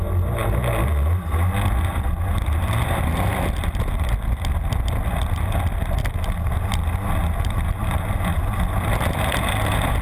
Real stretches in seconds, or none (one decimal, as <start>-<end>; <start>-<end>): 0.0-10.0